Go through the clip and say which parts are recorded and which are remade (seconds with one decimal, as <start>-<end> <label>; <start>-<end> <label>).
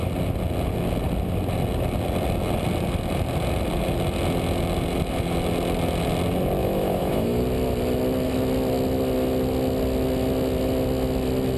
0.0-6.6 recorded; 6.6-7.4 remade; 7.4-11.6 recorded